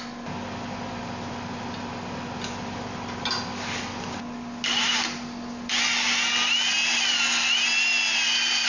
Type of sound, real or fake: real